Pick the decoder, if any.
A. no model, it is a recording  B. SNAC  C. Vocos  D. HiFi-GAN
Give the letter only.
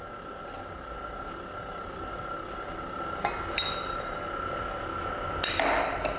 A